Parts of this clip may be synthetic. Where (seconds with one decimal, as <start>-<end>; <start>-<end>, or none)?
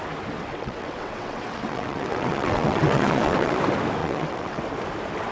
0.5-3.6; 4.0-4.6